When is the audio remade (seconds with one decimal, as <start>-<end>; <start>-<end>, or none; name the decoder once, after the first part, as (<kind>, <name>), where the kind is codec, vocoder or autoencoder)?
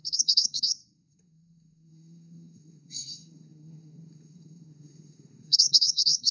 0.0-6.3 (codec, SNAC)